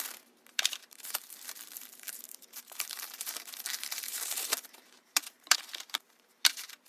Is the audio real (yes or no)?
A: no